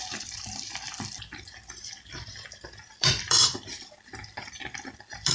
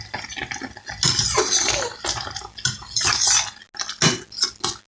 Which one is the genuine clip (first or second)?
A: second